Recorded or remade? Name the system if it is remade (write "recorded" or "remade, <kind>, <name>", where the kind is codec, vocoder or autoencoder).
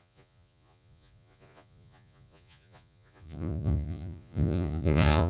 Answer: remade, vocoder, Vocos